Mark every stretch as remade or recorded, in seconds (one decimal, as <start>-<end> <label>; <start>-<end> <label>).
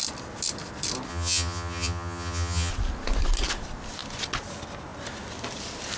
0.0-1.1 recorded; 1.1-2.7 remade; 2.7-6.0 recorded